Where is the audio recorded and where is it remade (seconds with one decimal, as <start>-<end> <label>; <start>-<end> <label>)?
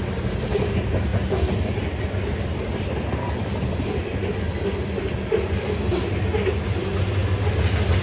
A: 0.0-8.0 recorded